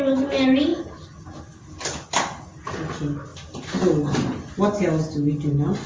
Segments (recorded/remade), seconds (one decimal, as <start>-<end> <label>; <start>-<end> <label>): 0.0-5.9 recorded